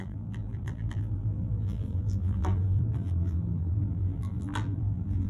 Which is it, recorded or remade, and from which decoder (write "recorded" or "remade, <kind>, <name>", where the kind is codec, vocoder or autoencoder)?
remade, vocoder, BigVGAN v2